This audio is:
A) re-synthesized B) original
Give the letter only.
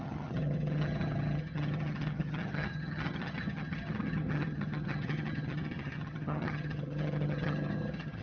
A